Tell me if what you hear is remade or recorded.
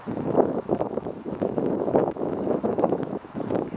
remade